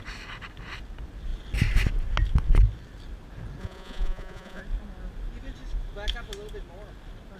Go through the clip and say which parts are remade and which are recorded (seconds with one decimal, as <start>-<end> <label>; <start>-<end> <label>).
0.0-3.6 recorded; 3.6-4.6 remade; 4.6-7.4 recorded